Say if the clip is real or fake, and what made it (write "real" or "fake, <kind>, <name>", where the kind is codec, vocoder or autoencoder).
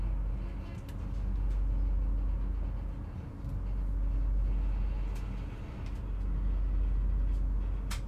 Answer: real